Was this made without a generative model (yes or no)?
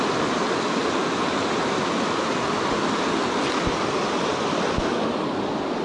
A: yes